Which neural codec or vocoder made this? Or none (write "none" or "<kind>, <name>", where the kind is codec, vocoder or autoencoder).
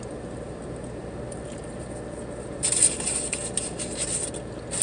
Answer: none